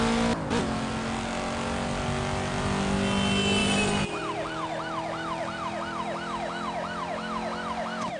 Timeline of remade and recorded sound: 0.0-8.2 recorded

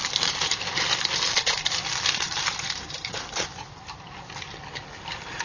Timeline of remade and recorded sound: 0.0-5.4 remade

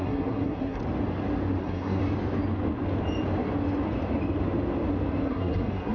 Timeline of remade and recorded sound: 0.0-0.8 remade; 0.8-1.6 recorded; 1.6-2.0 remade; 2.0-5.2 recorded; 5.2-5.9 remade

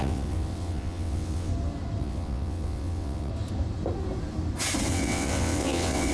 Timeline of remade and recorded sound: 0.0-1.5 remade; 1.5-2.0 recorded; 2.0-3.3 remade; 3.3-4.9 recorded; 4.9-6.1 remade

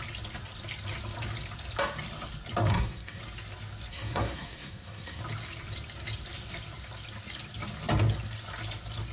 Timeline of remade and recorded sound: 0.0-2.7 recorded; 2.7-3.2 remade; 3.2-3.9 recorded; 3.9-5.2 remade; 5.2-9.1 recorded

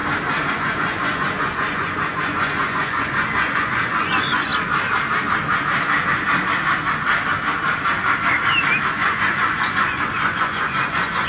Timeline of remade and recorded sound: 0.0-0.5 recorded; 0.5-4.5 remade; 4.5-8.9 recorded; 8.9-11.3 remade

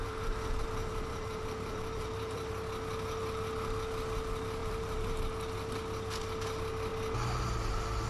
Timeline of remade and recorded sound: 0.0-2.5 remade; 2.5-4.6 recorded; 4.6-5.2 remade; 5.2-8.1 recorded